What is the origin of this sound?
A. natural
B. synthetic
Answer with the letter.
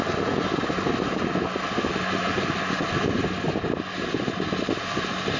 A